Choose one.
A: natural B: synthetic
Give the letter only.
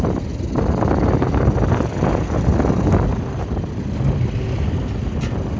A